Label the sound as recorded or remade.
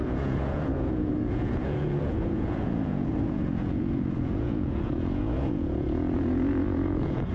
remade